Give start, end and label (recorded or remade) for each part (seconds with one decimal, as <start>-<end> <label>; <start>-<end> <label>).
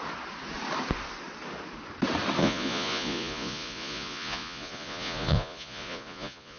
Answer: 0.0-2.4 recorded; 2.4-6.6 remade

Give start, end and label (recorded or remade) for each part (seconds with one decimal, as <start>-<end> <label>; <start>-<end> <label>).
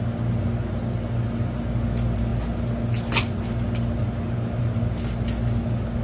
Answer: 0.0-6.0 recorded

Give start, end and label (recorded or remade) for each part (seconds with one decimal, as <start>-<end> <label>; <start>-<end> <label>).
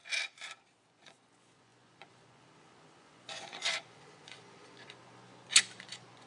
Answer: 0.0-0.9 recorded; 0.9-6.3 remade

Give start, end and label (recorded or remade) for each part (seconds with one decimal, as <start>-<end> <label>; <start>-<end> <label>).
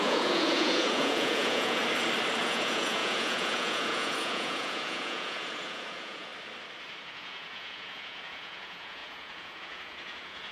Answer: 0.0-1.8 remade; 1.8-2.4 recorded; 2.4-6.3 remade; 6.3-7.0 recorded; 7.0-10.5 remade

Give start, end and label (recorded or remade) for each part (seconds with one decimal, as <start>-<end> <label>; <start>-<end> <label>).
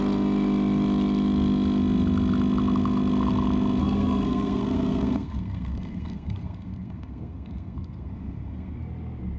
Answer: 0.0-3.8 recorded; 3.8-8.8 remade; 8.8-9.4 recorded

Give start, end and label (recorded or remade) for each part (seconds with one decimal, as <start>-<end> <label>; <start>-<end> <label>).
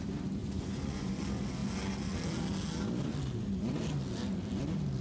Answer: 0.0-0.4 recorded; 0.4-1.2 remade; 1.2-5.0 recorded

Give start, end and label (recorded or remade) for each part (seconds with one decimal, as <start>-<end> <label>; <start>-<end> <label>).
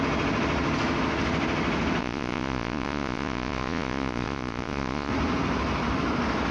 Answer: 0.0-2.0 recorded; 2.0-5.1 remade; 5.1-6.5 recorded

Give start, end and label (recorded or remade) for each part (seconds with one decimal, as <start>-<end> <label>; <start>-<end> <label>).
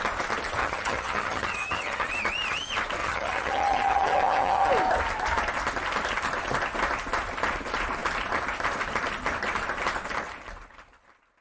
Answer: 0.0-0.6 recorded; 0.6-2.1 remade; 2.1-3.0 recorded; 3.0-4.7 remade; 4.7-11.4 recorded